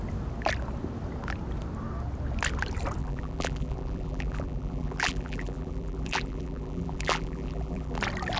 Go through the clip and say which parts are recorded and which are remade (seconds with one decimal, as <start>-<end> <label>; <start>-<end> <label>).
0.0-3.0 recorded; 3.0-8.0 remade; 8.0-8.4 recorded